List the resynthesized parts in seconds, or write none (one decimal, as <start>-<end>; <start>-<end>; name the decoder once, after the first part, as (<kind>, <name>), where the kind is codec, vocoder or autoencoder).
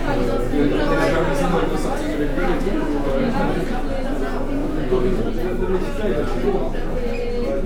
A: 2.3-3.3 (autoencoder, DAC-VAE); 4.6-5.3